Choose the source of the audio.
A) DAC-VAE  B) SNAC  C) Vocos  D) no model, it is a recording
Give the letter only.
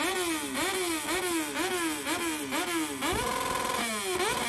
D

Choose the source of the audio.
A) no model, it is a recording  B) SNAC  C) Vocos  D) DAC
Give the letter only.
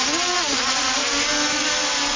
A